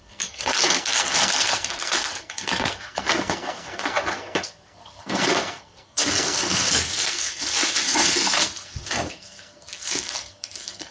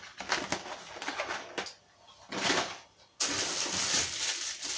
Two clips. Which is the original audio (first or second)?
second